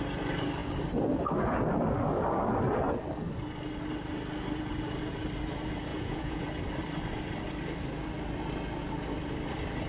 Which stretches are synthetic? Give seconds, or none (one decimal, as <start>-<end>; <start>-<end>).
5.9-6.4